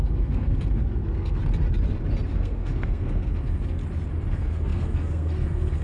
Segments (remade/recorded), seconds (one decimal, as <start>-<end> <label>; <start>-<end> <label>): 0.0-1.4 remade; 1.4-2.3 recorded; 2.3-3.8 remade; 3.8-4.3 recorded; 4.3-5.8 remade